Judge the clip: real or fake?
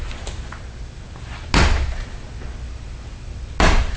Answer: real